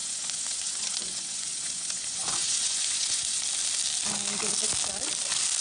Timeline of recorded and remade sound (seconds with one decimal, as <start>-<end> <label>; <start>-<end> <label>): 0.0-3.4 remade; 3.4-5.6 recorded